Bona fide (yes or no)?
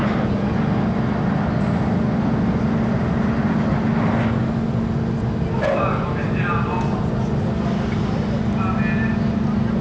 yes